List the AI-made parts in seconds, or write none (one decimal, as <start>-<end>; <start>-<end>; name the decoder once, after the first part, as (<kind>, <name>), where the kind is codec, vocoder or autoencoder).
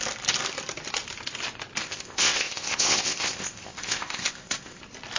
1.8-4.8 (codec, ZipCodec)